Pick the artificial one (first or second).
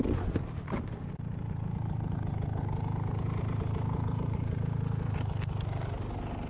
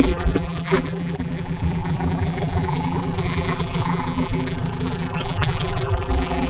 second